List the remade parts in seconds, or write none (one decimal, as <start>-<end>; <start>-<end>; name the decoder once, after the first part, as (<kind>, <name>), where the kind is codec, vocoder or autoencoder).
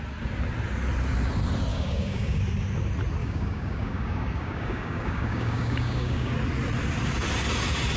1.7-2.4 (codec, DAC); 3.2-6.3